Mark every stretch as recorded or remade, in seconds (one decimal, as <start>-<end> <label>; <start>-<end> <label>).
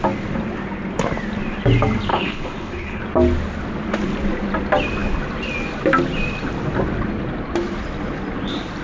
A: 0.0-2.1 recorded; 2.1-3.0 remade; 3.0-8.8 recorded